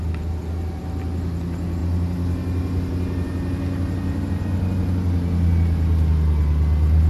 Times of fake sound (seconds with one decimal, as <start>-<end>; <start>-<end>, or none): none